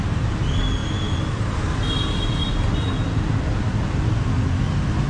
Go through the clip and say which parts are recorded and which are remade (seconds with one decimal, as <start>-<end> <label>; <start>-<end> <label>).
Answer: 0.0-5.1 recorded